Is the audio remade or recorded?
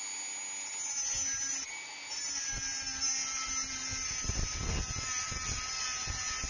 recorded